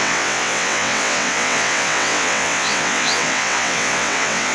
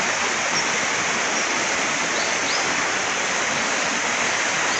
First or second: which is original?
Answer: second